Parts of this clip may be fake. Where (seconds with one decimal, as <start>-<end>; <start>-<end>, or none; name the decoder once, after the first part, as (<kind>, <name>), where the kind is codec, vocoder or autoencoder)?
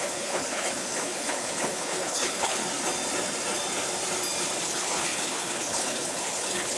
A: 0.0-2.6 (codec, HILCodec); 4.6-6.8